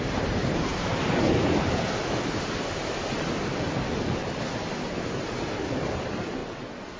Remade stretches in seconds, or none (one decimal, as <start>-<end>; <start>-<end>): 0.0-0.7; 4.9-6.4